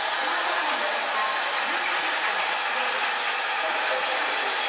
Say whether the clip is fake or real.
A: real